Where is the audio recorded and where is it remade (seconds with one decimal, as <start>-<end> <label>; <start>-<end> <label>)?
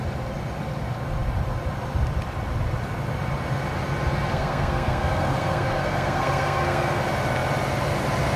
0.0-4.3 recorded; 4.3-7.0 remade; 7.0-8.4 recorded